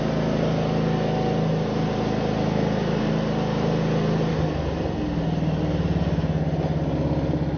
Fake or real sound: real